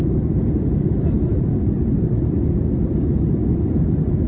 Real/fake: fake